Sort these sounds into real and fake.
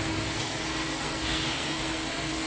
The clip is fake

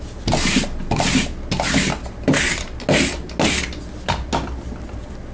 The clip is real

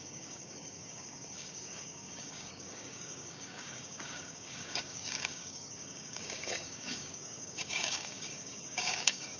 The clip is fake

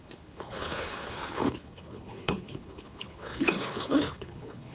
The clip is fake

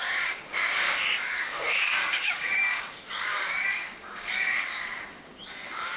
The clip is fake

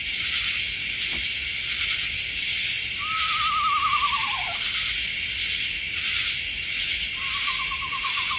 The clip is real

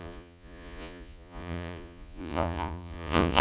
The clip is fake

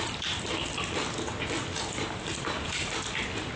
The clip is real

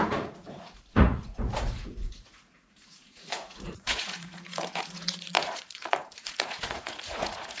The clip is fake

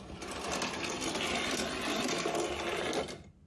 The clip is real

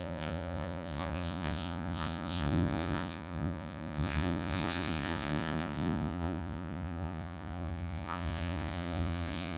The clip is fake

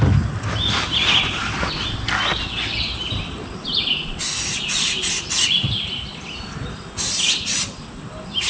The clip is real